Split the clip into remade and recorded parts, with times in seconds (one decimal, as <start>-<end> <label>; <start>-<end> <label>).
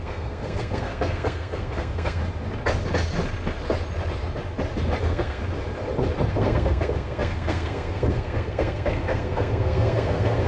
0.0-2.2 remade; 2.2-5.0 recorded; 5.0-5.4 remade; 5.4-6.3 recorded; 6.3-10.5 remade